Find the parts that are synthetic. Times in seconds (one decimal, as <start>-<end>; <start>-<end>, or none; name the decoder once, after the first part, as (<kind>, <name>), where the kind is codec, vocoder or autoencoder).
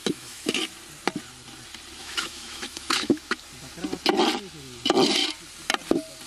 0.0-0.6 (autoencoder, DAC-VAE); 2.0-3.3